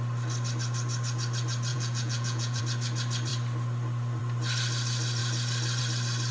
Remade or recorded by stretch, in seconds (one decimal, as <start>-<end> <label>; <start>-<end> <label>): 0.0-1.7 recorded; 1.7-2.6 remade; 2.6-6.3 recorded